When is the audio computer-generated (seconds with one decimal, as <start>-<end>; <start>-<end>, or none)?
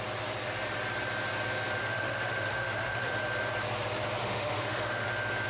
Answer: 1.8-3.1; 4.2-5.1